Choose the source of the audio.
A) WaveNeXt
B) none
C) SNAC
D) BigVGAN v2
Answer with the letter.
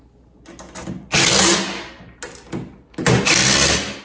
B